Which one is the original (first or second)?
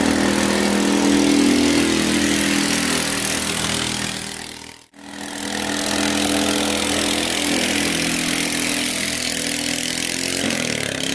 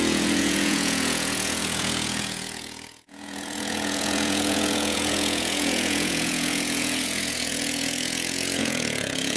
first